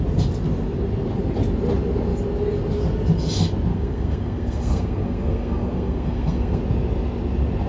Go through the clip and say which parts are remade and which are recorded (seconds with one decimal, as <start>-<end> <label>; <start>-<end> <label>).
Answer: 0.0-3.7 recorded; 3.7-6.6 remade; 6.6-7.7 recorded